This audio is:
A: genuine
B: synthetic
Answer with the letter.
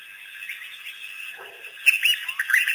A